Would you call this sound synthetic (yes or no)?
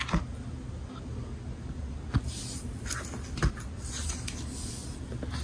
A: no